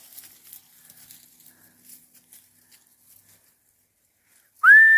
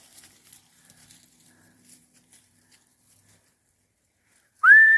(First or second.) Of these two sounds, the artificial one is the second